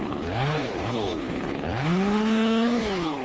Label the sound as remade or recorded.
remade